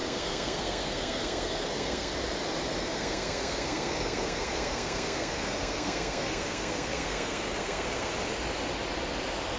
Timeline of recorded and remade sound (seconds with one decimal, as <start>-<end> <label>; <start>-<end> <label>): 0.0-2.1 remade; 2.1-2.8 recorded; 2.8-8.1 remade; 8.1-9.6 recorded